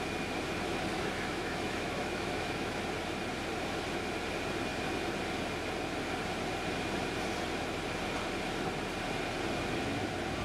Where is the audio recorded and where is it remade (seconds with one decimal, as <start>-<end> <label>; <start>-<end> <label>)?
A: 0.0-0.9 recorded; 0.9-2.8 remade; 2.8-10.4 recorded